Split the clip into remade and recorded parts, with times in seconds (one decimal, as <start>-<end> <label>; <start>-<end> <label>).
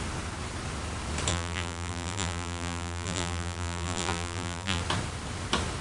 0.0-1.3 recorded; 1.3-4.8 remade; 4.8-5.8 recorded